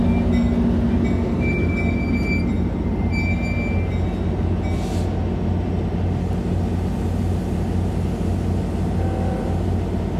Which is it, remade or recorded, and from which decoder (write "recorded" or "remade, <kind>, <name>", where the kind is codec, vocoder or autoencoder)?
recorded